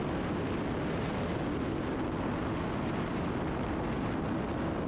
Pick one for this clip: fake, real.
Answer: real